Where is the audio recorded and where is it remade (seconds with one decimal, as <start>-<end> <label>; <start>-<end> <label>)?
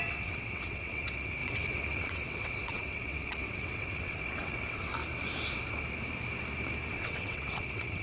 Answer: 0.0-4.9 remade; 4.9-6.9 recorded; 6.9-8.0 remade